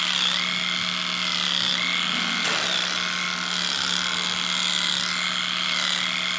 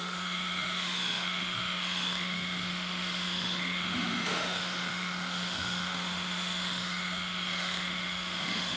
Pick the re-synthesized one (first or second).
second